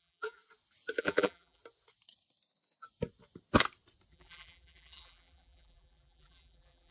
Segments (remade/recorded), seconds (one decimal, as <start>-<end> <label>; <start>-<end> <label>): 0.0-0.4 remade; 0.4-1.0 recorded; 1.0-1.6 remade; 1.6-4.1 recorded; 4.1-6.9 remade